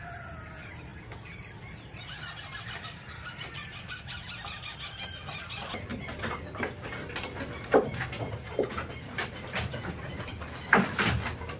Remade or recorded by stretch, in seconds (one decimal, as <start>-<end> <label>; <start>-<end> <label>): 0.0-11.6 recorded